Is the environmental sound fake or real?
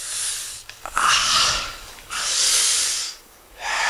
fake